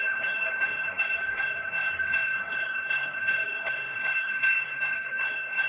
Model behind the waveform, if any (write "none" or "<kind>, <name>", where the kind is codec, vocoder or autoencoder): codec, SNAC